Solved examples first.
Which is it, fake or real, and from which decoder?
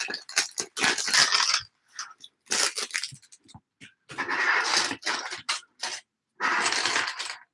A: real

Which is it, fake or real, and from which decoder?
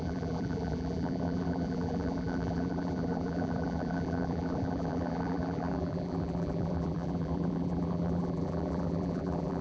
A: fake, vocoder, BigVGAN v2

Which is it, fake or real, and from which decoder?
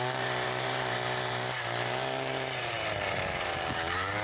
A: fake, vocoder, BigVGAN v2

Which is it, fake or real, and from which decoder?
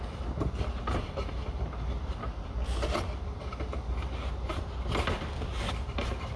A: real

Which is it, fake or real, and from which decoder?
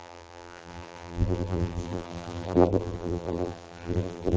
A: fake, vocoder, BigVGAN v2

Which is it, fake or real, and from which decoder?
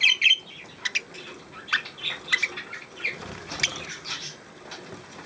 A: real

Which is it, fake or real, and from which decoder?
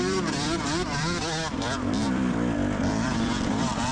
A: fake, vocoder, BigVGAN v2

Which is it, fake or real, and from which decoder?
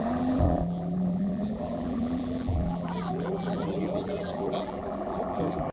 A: fake, vocoder, BigVGAN v2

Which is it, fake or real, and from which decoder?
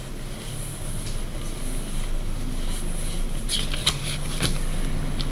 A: real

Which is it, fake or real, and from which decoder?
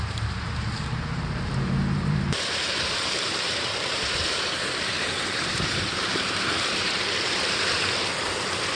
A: fake, vocoder, BigVGAN v2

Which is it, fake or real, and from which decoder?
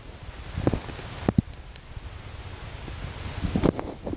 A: real